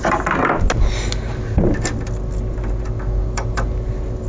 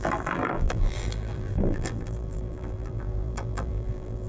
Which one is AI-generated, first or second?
second